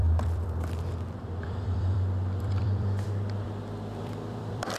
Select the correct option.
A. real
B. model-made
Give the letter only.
B